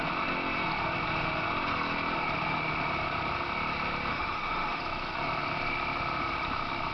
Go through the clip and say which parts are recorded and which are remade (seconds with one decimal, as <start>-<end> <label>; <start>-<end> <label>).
0.0-4.1 recorded; 4.1-4.8 remade; 4.8-6.9 recorded